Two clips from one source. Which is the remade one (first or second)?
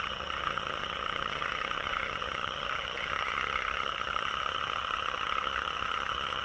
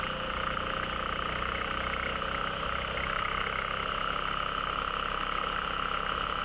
first